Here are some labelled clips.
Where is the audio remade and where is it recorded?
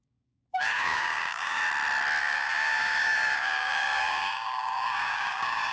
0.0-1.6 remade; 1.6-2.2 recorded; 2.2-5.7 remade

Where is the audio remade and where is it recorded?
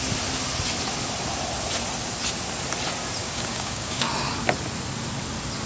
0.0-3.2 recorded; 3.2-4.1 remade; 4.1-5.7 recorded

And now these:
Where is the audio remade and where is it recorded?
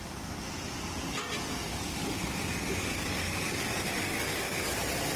0.0-1.7 recorded; 1.7-4.6 remade; 4.6-5.2 recorded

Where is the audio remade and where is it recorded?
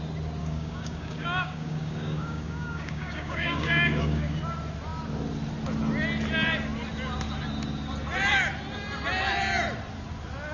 0.0-0.4 recorded; 0.4-4.4 remade; 4.4-10.5 recorded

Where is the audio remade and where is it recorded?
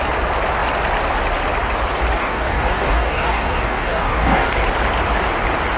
0.0-2.2 recorded; 2.2-4.5 remade; 4.5-5.8 recorded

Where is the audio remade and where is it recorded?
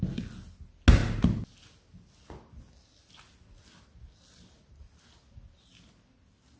0.0-6.6 recorded